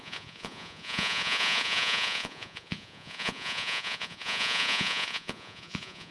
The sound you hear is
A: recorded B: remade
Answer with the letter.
B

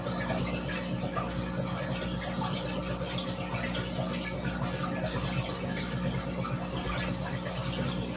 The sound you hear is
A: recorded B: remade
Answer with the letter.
A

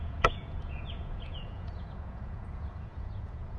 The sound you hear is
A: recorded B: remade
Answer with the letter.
B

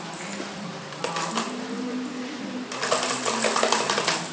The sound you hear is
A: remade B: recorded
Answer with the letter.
B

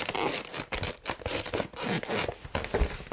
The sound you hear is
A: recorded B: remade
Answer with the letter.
A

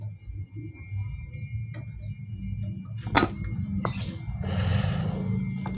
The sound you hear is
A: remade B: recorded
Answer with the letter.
B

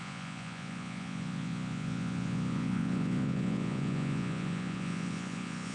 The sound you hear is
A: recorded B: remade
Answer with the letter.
B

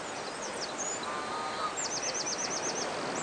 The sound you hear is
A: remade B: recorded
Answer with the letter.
B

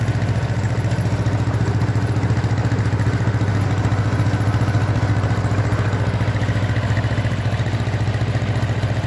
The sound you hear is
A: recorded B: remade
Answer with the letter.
A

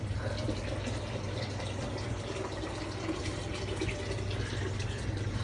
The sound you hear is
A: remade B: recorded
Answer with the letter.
B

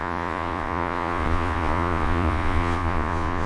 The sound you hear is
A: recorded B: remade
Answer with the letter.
B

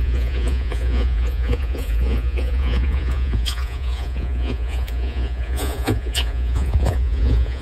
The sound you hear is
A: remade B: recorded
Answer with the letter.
A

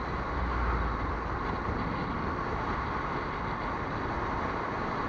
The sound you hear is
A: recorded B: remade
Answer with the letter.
A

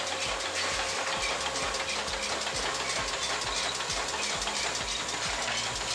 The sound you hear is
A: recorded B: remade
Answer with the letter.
A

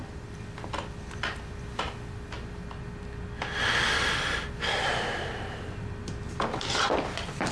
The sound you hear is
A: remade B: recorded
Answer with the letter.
B